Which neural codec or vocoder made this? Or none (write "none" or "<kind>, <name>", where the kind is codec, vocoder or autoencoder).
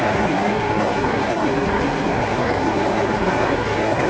codec, SNAC